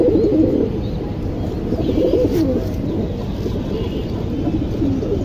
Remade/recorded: recorded